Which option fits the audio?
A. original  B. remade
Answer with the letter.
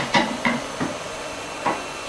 B